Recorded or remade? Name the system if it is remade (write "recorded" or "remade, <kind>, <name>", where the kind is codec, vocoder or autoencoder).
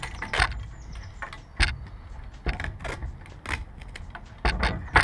recorded